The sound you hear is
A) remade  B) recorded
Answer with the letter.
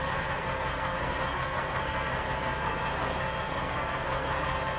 A